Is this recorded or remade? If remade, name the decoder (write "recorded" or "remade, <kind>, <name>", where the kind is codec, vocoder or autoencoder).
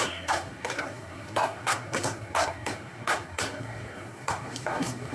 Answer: remade, codec, SNAC